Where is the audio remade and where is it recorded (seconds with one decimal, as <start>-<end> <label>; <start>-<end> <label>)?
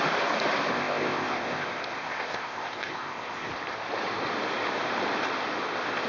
0.0-0.7 recorded; 0.7-3.5 remade; 3.5-6.1 recorded